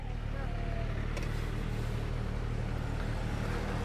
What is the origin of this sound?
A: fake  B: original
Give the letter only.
B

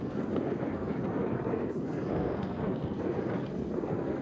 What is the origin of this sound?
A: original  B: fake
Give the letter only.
B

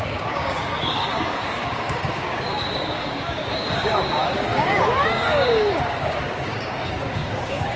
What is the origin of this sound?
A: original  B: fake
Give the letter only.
B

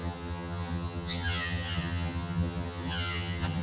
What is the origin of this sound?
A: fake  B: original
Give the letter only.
A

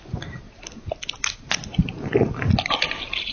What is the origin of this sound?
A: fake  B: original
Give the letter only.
B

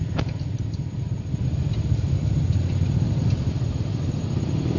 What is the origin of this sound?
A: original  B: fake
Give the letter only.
A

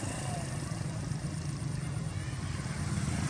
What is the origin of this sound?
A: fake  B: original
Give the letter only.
B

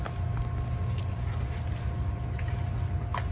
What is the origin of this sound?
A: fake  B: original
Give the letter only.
B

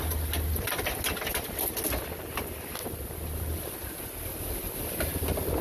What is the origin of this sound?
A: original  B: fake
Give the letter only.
A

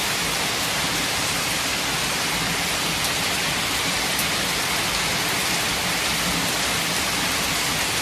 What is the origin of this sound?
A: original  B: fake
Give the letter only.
A